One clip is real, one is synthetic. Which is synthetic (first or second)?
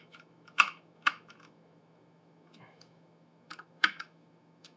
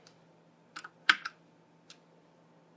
first